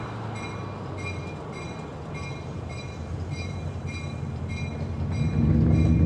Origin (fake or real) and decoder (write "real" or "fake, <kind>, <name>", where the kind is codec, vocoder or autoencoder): real